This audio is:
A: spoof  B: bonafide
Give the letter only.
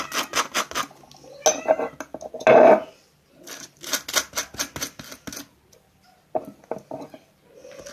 B